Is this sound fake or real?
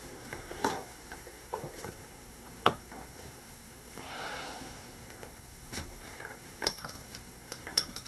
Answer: fake